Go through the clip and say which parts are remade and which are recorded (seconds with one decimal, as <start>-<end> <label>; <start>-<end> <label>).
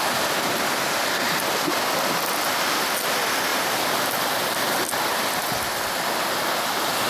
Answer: 0.0-7.1 recorded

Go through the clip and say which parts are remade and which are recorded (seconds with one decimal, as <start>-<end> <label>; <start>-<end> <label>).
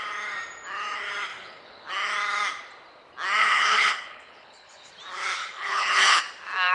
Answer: 0.0-1.3 recorded; 1.3-1.9 remade; 1.9-3.4 recorded; 3.4-4.9 remade; 4.9-5.4 recorded; 5.4-6.2 remade; 6.2-6.7 recorded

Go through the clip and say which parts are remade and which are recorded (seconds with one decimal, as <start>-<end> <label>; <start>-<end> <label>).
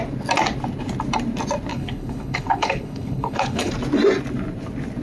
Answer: 0.0-1.7 recorded; 1.7-3.7 remade; 3.7-5.0 recorded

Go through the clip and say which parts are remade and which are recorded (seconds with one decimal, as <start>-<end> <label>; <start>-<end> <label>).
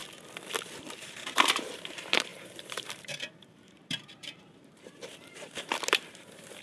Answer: 0.0-0.8 recorded; 0.8-6.6 remade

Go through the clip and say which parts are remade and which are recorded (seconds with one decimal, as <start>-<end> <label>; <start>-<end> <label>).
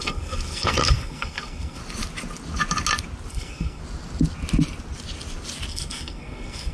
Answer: 0.0-1.8 remade; 1.8-3.3 recorded; 3.3-3.8 remade; 3.8-5.7 recorded; 5.7-6.7 remade